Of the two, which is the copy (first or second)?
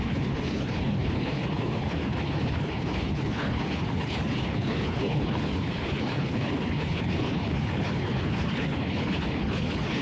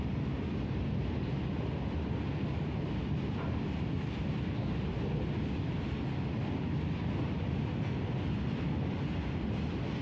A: first